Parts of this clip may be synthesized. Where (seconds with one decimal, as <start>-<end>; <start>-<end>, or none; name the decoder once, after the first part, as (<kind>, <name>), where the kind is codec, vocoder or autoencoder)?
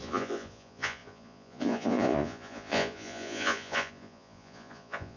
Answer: 0.0-5.2 (vocoder, Vocos)